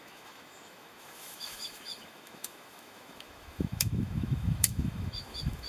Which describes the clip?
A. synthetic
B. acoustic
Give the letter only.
A